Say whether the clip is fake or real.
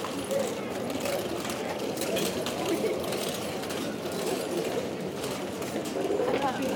fake